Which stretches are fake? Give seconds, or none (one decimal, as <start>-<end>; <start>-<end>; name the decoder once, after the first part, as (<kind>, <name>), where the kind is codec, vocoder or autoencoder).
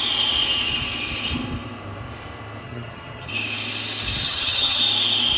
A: 2.6-3.3 (vocoder, HiFi-GAN); 4.2-4.8